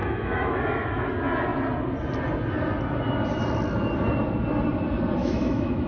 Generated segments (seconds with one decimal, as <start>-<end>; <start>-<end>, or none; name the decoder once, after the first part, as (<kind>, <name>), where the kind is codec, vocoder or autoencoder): 0.0-1.1 (autoencoder, DAC-VAE); 5.2-5.9